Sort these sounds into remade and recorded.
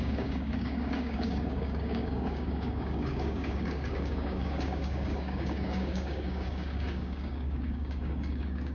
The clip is remade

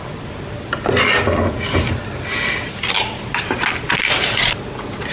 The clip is recorded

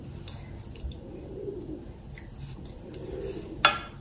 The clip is recorded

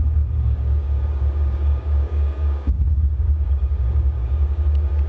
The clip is remade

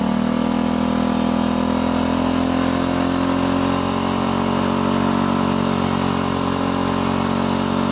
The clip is recorded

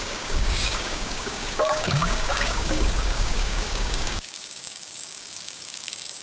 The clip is remade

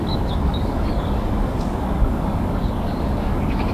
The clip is remade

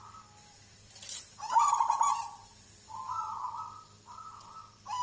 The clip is recorded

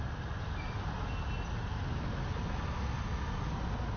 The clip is recorded